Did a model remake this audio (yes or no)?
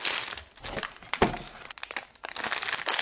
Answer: no